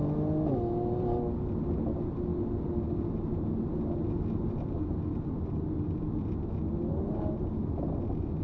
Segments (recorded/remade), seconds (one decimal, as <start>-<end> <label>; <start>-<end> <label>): 0.0-8.4 recorded